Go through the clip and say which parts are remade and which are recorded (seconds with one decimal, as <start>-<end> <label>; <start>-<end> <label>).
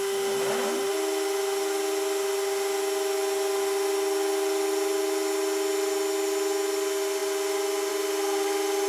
0.0-8.9 recorded